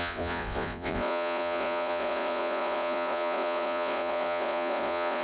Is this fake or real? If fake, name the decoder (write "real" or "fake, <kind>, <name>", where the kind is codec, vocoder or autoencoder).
fake, vocoder, Vocos